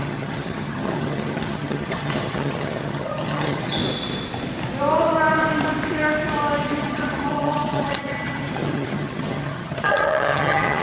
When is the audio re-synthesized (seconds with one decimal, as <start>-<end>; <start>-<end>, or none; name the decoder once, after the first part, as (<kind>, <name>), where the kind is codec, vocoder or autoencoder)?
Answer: 0.0-3.8 (vocoder, HiFi-GAN); 6.8-10.8